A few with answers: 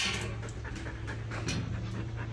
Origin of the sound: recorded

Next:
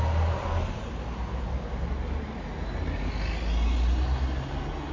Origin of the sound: recorded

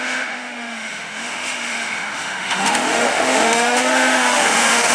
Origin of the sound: remade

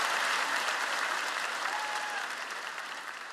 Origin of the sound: remade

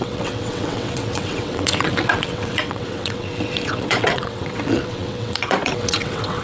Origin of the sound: remade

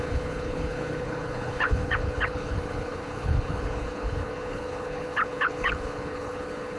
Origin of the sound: remade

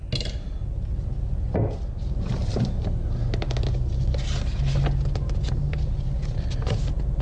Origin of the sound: recorded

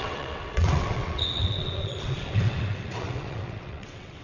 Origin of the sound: remade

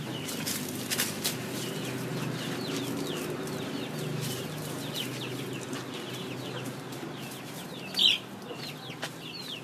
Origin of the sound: recorded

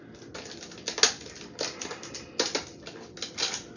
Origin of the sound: recorded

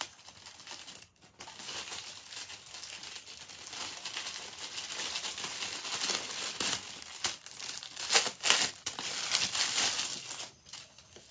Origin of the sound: recorded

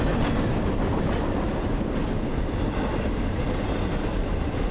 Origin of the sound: recorded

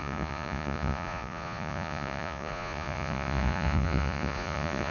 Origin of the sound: remade